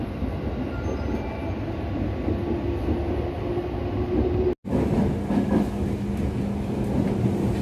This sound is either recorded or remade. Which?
recorded